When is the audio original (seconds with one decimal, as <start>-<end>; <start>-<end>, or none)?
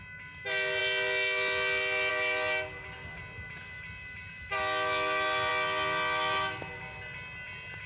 0.0-7.9